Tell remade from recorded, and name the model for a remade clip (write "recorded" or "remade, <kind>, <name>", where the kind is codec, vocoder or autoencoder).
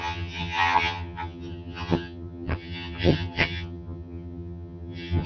remade, vocoder, HiFi-GAN